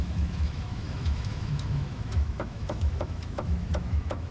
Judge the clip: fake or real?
fake